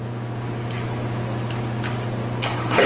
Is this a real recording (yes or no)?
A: yes